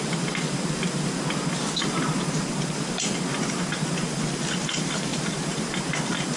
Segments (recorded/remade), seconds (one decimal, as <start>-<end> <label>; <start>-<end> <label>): 0.0-6.4 recorded

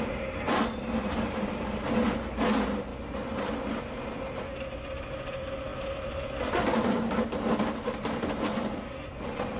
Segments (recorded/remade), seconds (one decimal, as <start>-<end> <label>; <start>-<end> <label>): 0.0-9.6 recorded

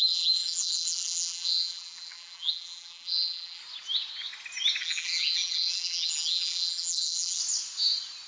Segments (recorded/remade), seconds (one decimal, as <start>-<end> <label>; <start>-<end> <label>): 0.0-3.6 remade; 3.6-4.8 recorded; 4.8-7.4 remade; 7.4-8.3 recorded

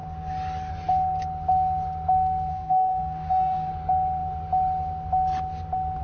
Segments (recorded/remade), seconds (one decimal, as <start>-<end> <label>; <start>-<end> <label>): 0.0-2.5 recorded; 2.5-3.7 remade; 3.7-6.0 recorded